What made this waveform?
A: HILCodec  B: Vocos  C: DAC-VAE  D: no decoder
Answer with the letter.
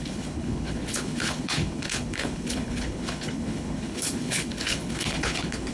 A